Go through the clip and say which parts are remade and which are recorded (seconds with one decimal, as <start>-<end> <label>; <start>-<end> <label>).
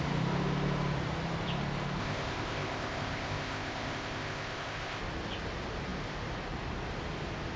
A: 0.0-2.0 recorded; 2.0-5.0 remade; 5.0-7.6 recorded